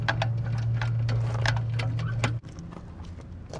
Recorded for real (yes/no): yes